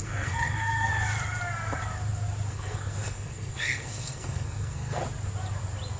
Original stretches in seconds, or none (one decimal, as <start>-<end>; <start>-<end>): 0.9-2.5; 5.0-6.0